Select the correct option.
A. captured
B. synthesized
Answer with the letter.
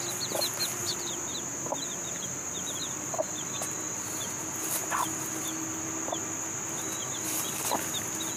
A